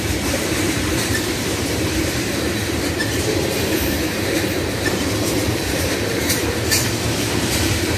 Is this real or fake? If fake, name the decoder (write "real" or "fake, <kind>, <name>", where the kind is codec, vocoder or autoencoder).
fake, vocoder, BigVGAN v2